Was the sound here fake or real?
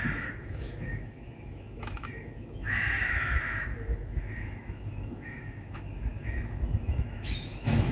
fake